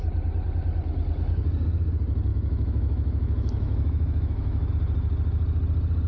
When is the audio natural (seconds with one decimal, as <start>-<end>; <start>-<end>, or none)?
0.0-2.3; 4.7-6.1